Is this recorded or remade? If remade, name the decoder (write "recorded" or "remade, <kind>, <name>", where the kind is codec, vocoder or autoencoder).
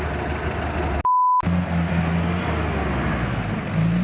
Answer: recorded